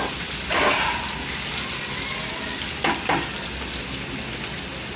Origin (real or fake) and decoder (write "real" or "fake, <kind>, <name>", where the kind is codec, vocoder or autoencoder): real